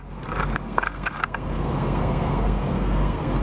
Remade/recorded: remade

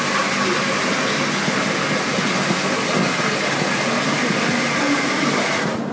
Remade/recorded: recorded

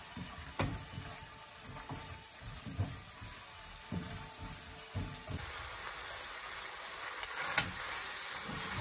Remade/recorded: recorded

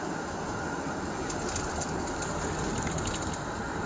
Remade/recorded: recorded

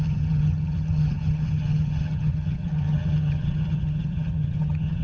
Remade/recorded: remade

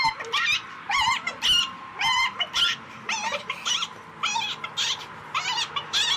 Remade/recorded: recorded